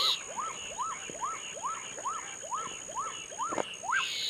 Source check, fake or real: real